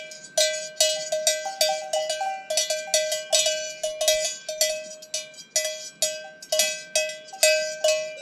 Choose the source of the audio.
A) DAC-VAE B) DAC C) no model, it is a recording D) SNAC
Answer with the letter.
C